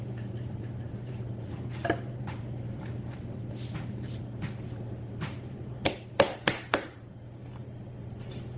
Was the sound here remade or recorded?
remade